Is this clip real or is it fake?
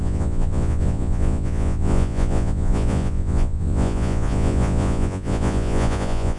fake